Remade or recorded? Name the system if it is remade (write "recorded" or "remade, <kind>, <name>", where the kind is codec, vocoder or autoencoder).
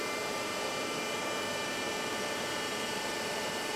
remade, vocoder, BigVGAN v2